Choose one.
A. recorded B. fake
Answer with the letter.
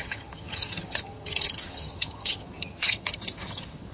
B